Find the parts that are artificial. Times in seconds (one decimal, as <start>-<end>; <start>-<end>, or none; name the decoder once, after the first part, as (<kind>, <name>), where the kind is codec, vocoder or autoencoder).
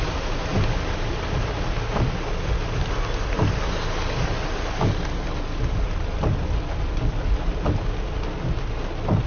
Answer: none